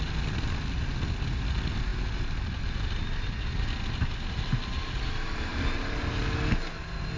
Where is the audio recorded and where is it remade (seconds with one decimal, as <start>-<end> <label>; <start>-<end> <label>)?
0.0-7.2 recorded